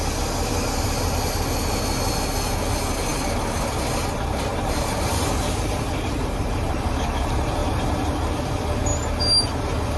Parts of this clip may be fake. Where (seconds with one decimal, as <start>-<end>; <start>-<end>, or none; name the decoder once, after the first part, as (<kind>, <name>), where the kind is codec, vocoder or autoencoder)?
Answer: 4.5-6.9 (vocoder, BigVGAN v2)